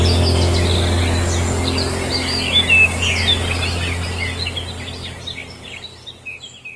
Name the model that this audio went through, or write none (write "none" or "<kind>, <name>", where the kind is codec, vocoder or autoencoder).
none